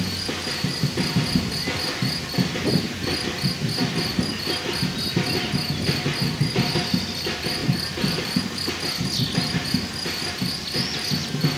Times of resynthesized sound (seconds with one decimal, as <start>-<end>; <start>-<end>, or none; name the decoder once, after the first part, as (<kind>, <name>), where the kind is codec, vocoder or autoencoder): 7.6-8.7 (vocoder, BigVGAN v2)